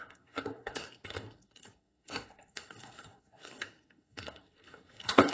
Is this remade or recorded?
remade